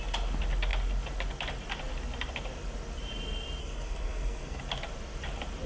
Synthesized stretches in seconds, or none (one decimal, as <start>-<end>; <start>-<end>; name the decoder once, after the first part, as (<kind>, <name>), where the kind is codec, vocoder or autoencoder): 3.6-4.6 (codec, SNAC)